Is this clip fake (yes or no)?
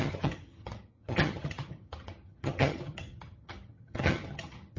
yes